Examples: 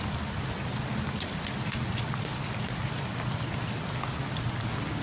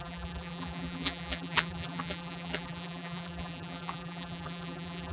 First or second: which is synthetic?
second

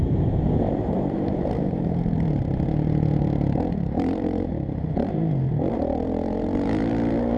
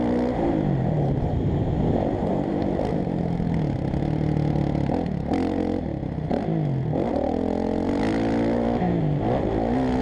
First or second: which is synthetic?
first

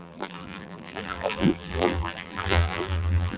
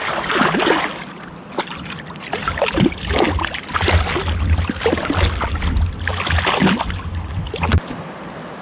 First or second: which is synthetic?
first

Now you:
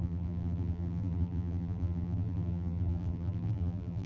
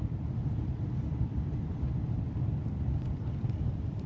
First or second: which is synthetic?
first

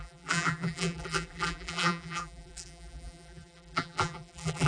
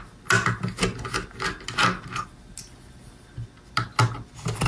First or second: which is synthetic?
first